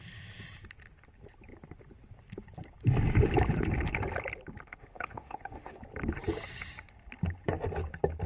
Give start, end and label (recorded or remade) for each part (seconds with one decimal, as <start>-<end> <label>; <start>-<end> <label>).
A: 0.0-4.7 recorded; 4.7-5.8 remade; 5.8-8.3 recorded